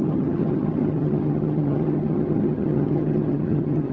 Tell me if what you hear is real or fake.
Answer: fake